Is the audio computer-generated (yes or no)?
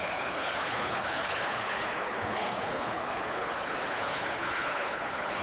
yes